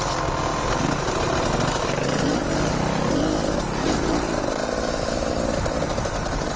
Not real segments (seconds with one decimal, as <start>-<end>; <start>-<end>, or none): none